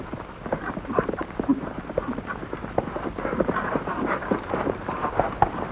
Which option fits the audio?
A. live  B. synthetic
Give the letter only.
B